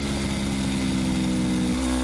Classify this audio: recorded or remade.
recorded